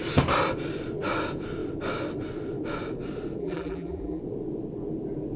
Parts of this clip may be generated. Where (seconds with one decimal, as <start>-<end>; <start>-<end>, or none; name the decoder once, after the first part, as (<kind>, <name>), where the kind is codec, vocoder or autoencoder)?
3.4-4.2 (vocoder, BigVGAN v2)